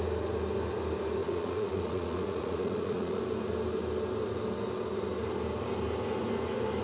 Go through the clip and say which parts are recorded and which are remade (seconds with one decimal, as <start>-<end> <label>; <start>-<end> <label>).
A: 0.0-1.2 recorded; 1.2-3.2 remade; 3.2-6.8 recorded